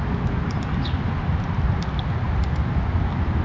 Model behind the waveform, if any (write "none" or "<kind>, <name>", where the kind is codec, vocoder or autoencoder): none